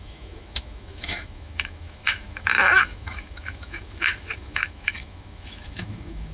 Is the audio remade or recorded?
remade